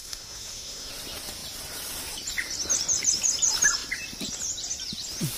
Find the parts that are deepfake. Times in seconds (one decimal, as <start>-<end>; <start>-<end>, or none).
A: 0.0-0.9